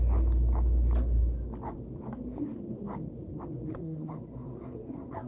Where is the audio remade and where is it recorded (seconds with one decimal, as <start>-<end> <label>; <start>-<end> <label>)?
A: 0.0-3.7 recorded; 3.7-5.3 remade

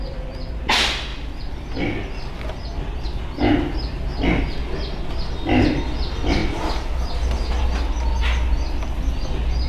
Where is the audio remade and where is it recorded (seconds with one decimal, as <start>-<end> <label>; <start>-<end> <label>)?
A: 0.0-9.7 recorded

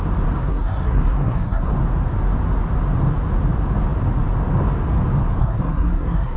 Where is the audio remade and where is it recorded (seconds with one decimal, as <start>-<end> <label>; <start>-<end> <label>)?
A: 0.0-0.4 recorded; 0.4-1.7 remade; 1.7-5.4 recorded; 5.4-6.4 remade